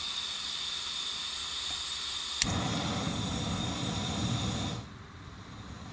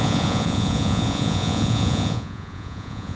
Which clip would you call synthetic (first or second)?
second